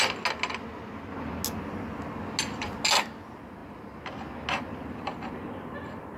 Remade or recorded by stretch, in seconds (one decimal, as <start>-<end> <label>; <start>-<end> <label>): 0.0-6.2 recorded